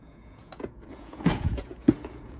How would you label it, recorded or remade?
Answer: remade